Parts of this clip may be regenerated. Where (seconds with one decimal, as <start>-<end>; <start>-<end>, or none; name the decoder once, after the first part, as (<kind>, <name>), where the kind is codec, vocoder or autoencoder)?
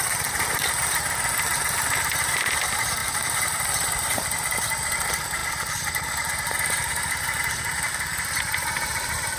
3.0-3.6 (vocoder, BigVGAN v2)